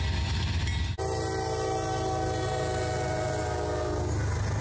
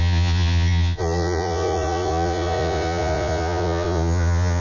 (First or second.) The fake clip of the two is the second